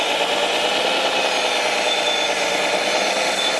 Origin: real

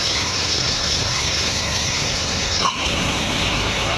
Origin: fake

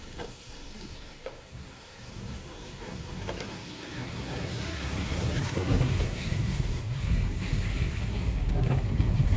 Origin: fake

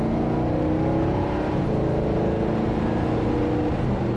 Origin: real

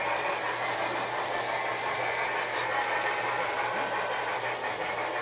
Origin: real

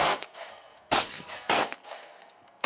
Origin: fake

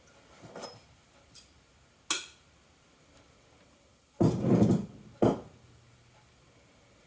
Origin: real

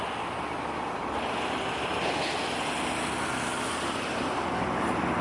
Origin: real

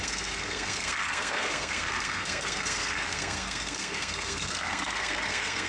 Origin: fake